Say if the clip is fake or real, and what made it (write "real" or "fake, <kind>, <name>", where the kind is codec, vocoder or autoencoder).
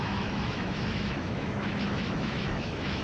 fake, autoencoder, DAC-VAE